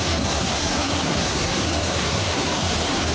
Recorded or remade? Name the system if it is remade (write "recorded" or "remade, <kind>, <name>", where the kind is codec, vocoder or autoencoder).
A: remade, codec, SNAC